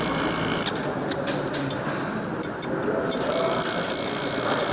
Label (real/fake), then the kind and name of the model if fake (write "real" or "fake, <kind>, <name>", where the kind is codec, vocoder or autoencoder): real